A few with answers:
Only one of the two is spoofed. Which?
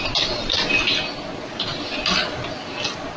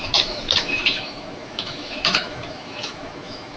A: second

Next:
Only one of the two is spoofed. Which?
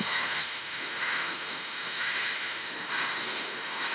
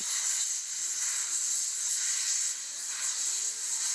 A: first